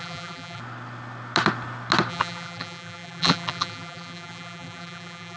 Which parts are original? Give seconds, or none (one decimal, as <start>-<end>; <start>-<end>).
0.6-2.1